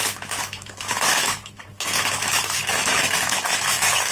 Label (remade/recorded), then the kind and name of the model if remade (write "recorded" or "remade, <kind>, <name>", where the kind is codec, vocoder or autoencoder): remade, autoencoder, DAC-VAE